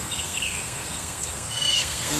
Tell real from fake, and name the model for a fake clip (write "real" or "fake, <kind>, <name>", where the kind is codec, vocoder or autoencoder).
fake, codec, SNAC